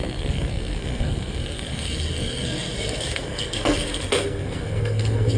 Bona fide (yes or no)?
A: no